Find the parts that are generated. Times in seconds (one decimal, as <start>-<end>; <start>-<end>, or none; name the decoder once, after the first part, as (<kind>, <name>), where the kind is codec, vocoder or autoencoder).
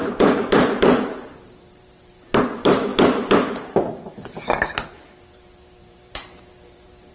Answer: 1.0-2.9 (vocoder, BigVGAN v2); 4.6-7.1